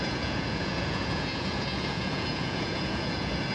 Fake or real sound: fake